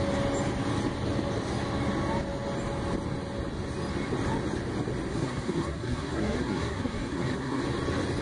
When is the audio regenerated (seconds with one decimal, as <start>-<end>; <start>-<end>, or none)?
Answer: 5.1-7.6